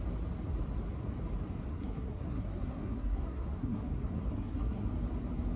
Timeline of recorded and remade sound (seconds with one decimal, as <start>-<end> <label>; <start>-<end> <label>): 0.0-1.7 recorded; 1.7-4.9 remade; 4.9-5.6 recorded